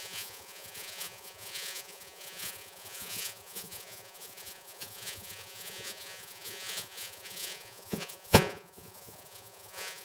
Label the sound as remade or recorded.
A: remade